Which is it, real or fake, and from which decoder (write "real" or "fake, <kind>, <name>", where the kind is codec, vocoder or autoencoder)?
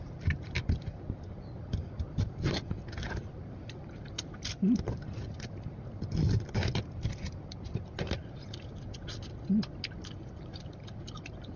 real